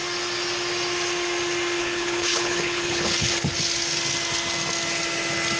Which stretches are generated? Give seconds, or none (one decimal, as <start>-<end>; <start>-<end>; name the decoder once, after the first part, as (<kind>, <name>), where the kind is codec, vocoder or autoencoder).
1.8-3.3 (codec, HILCodec)